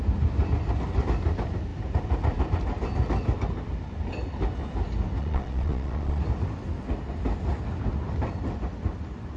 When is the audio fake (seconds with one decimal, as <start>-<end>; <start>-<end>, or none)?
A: 5.2-6.2